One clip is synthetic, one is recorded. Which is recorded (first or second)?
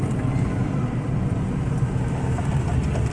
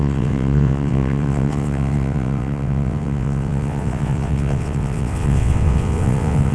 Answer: first